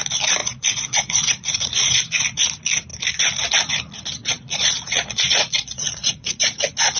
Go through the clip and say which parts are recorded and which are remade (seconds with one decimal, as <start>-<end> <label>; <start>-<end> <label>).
0.0-0.4 recorded; 0.4-1.9 remade; 1.9-4.2 recorded; 4.2-6.4 remade; 6.4-7.0 recorded